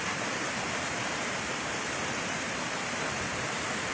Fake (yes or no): yes